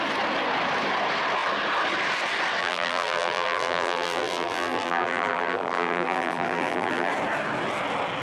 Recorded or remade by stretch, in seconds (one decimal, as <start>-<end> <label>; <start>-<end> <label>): 0.0-2.6 recorded; 2.6-7.1 remade; 7.1-8.2 recorded